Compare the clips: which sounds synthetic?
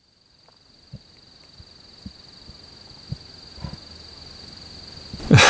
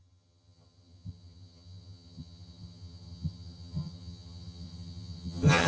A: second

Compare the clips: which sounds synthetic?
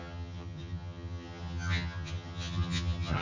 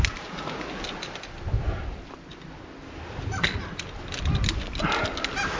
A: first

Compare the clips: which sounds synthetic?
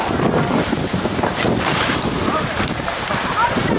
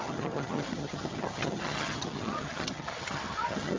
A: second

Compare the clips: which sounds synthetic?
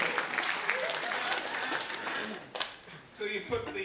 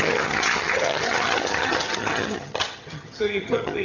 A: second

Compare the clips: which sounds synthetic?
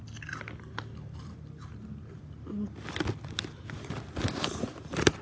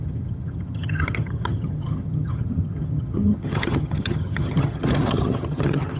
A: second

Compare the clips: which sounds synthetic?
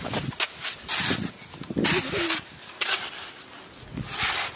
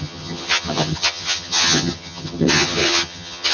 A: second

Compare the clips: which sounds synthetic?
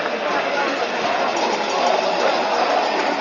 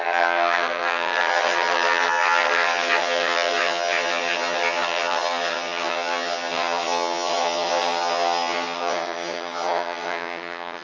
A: second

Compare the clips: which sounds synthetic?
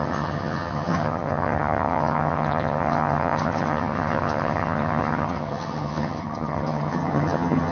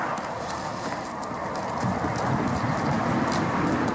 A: first